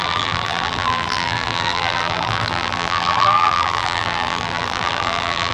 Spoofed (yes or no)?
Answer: yes